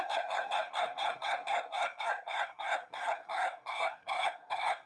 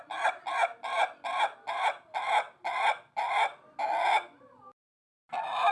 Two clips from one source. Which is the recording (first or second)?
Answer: second